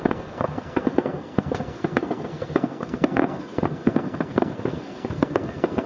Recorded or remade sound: remade